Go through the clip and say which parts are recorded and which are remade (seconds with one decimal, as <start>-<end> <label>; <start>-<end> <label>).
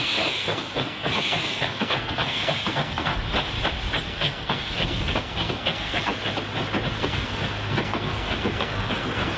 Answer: 0.0-3.1 remade; 3.1-4.0 recorded; 4.0-6.2 remade; 6.2-6.9 recorded; 6.9-9.4 remade